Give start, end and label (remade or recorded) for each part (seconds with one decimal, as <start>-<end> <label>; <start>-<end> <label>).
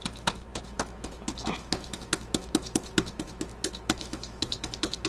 0.0-5.1 remade